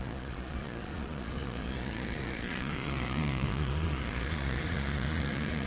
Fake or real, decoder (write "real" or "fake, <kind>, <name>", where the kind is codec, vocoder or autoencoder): fake, vocoder, Vocos